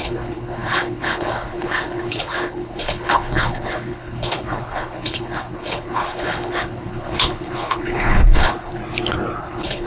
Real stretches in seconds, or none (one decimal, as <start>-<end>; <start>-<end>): 8.8-9.4